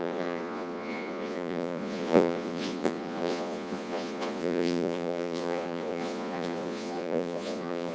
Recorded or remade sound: remade